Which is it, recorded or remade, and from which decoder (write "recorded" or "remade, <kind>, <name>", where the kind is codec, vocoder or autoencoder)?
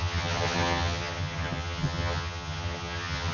remade, vocoder, HiFi-GAN